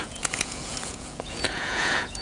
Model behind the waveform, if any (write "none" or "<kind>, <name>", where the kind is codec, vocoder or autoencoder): vocoder, Vocos